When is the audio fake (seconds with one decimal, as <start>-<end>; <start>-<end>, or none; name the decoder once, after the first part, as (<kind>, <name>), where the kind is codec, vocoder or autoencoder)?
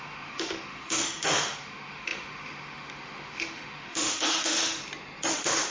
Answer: 0.0-4.8 (autoencoder, DAC-VAE); 5.3-5.7